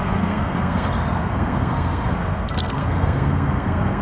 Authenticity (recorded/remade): remade